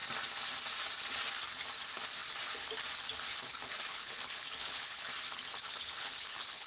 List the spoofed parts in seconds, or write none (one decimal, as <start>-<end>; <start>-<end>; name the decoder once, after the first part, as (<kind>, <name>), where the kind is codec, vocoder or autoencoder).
3.3-5.1 (codec, HILCodec); 5.5-6.7